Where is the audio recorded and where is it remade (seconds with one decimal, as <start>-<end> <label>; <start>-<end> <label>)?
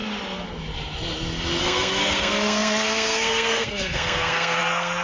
0.0-1.6 recorded; 1.6-5.0 remade